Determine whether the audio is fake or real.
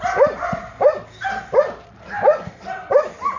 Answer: real